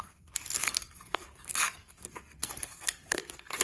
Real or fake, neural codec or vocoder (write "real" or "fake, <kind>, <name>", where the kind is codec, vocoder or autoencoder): fake, codec, SNAC